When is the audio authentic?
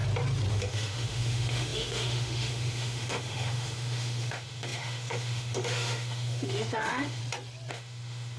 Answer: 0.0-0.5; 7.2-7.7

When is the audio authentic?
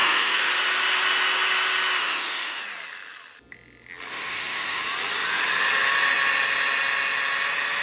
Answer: 0.5-2.0; 2.6-4.1; 4.8-7.8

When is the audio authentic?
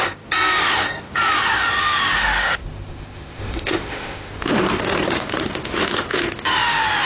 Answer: 0.0-2.1; 4.3-7.1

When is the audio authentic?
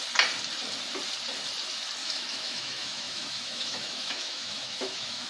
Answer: 0.0-2.0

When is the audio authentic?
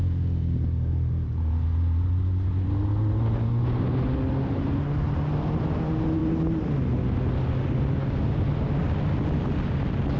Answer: 0.0-10.2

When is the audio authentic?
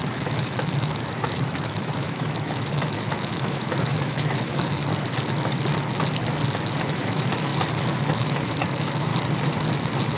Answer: 4.8-6.9; 7.5-8.0; 9.1-10.2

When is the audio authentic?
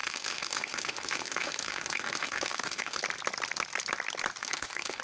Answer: 3.0-4.4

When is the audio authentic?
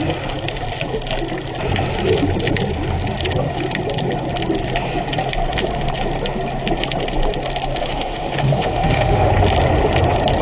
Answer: 0.0-7.8; 9.3-10.4